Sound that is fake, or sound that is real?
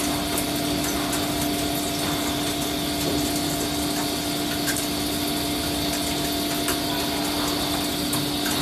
real